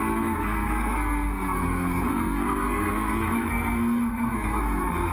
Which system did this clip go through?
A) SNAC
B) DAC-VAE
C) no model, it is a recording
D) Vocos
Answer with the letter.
A